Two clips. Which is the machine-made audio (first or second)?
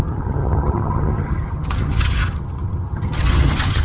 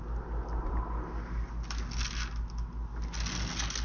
first